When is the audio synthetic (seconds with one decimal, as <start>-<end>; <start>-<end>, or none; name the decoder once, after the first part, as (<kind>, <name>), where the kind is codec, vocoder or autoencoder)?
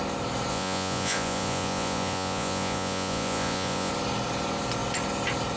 0.5-3.9 (vocoder, Vocos)